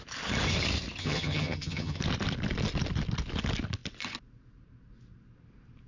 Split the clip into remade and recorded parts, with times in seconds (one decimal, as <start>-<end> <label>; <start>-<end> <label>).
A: 0.0-1.0 recorded; 1.0-2.0 remade; 2.0-5.9 recorded